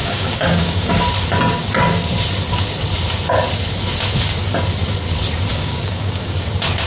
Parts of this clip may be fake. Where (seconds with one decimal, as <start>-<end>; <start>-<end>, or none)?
0.0-0.9; 5.5-6.5